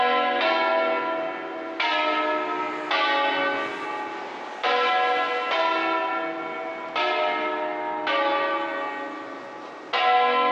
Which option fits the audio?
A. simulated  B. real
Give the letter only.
B